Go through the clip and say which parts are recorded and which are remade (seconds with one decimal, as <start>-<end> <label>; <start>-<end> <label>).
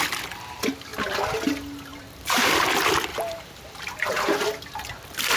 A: 0.0-1.9 recorded; 1.9-2.7 remade; 2.7-3.1 recorded; 3.1-4.4 remade; 4.4-5.4 recorded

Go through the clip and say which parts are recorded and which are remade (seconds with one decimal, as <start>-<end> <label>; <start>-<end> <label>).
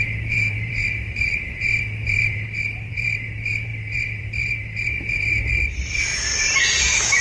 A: 0.0-6.1 remade; 6.1-7.2 recorded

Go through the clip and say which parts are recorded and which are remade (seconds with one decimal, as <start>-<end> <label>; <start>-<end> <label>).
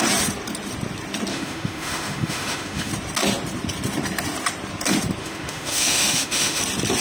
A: 0.0-1.3 recorded; 1.3-2.9 remade; 2.9-5.2 recorded; 5.2-6.6 remade; 6.6-7.0 recorded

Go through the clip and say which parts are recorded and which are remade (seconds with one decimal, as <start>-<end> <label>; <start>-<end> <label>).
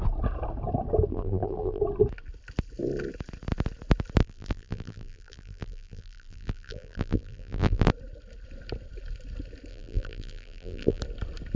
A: 0.0-1.1 recorded; 1.1-1.8 remade; 1.8-4.2 recorded; 4.2-7.9 remade; 7.9-9.7 recorded; 9.7-11.0 remade; 11.0-11.6 recorded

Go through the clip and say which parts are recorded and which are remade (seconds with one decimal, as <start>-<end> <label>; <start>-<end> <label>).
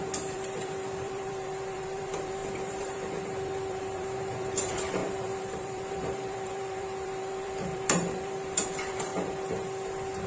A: 0.0-9.1 remade; 9.1-10.3 recorded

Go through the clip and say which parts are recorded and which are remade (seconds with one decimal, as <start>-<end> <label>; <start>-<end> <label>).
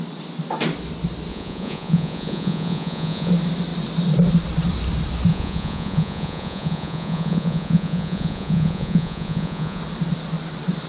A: 0.0-1.3 recorded; 1.3-3.3 remade; 3.3-5.3 recorded; 5.3-9.8 remade; 9.8-10.9 recorded